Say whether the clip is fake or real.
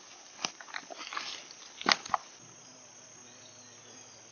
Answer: real